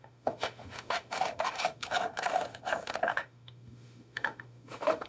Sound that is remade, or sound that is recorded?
remade